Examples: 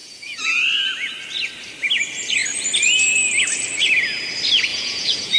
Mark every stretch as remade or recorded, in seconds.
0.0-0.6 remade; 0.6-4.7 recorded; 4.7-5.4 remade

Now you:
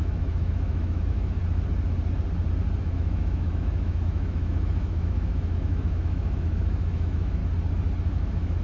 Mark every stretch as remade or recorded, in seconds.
0.0-1.4 remade; 1.4-2.8 recorded; 2.8-7.4 remade; 7.4-8.1 recorded; 8.1-8.6 remade